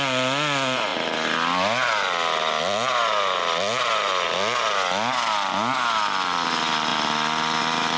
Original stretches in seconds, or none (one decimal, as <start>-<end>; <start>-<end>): 0.0-8.0